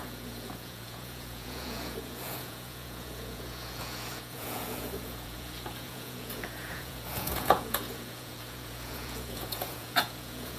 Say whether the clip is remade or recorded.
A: remade